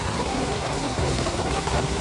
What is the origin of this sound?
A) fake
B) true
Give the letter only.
A